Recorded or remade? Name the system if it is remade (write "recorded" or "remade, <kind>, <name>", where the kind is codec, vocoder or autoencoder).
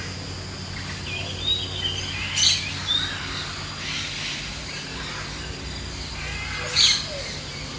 recorded